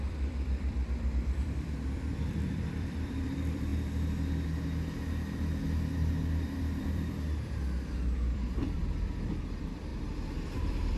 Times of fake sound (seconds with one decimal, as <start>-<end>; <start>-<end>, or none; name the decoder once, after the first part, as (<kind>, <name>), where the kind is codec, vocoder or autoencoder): 0.0-3.7 (vocoder, BigVGAN v2); 6.6-8.8; 9.4-9.9; 10.5-11.0